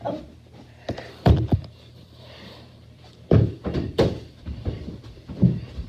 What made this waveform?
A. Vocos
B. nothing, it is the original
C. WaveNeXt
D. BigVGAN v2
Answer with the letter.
D